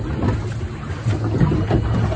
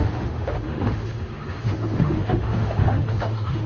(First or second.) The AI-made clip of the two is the second